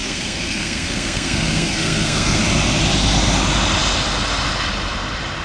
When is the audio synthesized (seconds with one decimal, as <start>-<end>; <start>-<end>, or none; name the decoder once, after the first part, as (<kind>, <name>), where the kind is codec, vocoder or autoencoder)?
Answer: 0.0-2.4 (codec, SNAC)